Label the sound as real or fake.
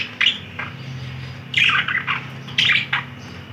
real